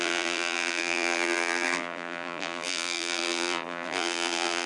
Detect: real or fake fake